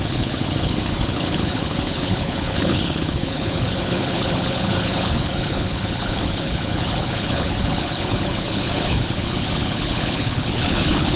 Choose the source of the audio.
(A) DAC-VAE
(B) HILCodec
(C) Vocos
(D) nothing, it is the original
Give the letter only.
B